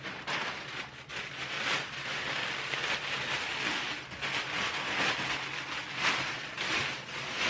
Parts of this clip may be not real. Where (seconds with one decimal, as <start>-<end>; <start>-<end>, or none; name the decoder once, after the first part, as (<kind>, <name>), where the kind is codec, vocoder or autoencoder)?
1.1-3.7 (vocoder, BigVGAN v2)